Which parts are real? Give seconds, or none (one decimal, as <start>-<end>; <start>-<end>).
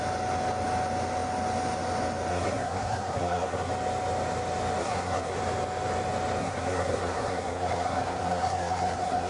0.0-2.3; 3.7-4.8; 5.4-6.4